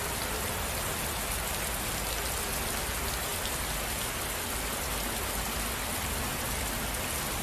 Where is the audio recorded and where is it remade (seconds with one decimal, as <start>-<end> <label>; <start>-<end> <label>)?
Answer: 0.0-7.4 recorded